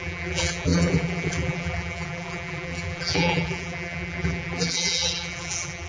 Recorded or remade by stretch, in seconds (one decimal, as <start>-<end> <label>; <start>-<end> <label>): 0.0-5.9 remade

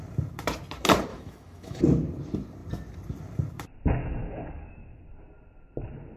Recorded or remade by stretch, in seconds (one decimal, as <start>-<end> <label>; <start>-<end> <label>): 0.0-1.1 recorded; 1.1-1.8 remade; 1.8-4.0 recorded; 4.0-5.0 remade; 5.0-6.2 recorded

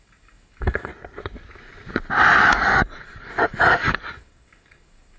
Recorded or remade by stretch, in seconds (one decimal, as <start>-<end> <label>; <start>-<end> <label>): 0.0-0.9 remade; 0.9-2.4 recorded; 2.4-5.2 remade

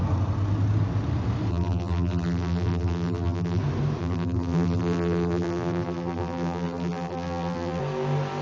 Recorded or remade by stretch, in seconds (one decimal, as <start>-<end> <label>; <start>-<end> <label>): 0.0-1.5 recorded; 1.5-3.6 remade; 3.6-4.0 recorded; 4.0-7.8 remade; 7.8-8.4 recorded

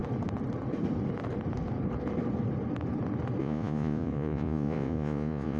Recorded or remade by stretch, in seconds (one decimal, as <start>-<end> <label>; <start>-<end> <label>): 0.0-3.4 recorded; 3.4-5.6 remade